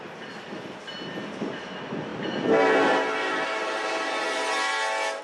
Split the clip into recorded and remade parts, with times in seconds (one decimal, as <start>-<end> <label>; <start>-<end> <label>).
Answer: 0.0-5.2 recorded